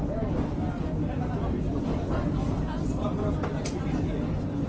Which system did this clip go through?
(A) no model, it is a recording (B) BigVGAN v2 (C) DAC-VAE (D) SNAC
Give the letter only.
A